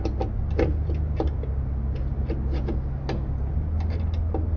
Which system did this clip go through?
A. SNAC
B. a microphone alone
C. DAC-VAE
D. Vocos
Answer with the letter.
B